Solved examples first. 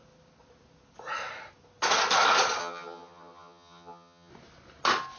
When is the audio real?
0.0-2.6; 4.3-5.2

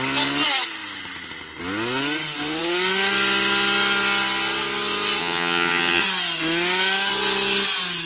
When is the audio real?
0.0-5.2; 6.0-8.1

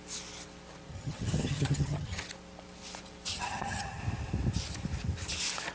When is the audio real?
0.0-0.9; 2.2-3.3; 4.0-5.7

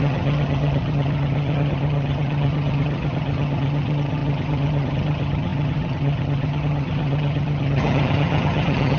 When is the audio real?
none

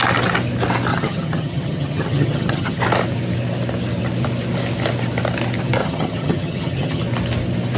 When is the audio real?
0.0-0.9; 2.8-5.8; 7.0-7.8